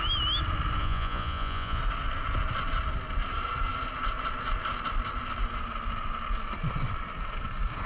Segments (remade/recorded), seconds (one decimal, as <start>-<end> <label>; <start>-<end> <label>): 0.0-0.8 recorded; 0.8-1.8 remade; 1.8-7.9 recorded